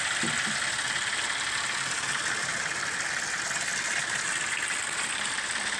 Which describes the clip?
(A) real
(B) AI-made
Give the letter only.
A